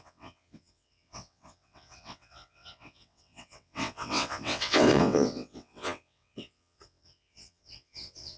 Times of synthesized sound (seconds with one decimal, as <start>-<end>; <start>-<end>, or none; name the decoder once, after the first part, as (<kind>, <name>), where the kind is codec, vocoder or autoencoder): 0.0-8.4 (vocoder, WaveNeXt)